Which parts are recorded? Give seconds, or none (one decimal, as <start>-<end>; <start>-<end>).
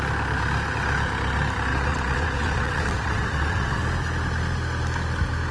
0.0-1.7; 3.8-5.5